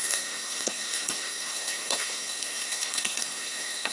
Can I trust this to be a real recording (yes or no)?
no